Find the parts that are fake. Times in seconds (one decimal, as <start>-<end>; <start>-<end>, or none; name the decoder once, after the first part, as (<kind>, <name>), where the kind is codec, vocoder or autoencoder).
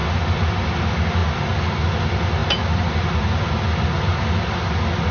0.0-0.7 (vocoder, BigVGAN v2); 2.4-3.5